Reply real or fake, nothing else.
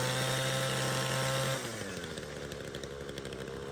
real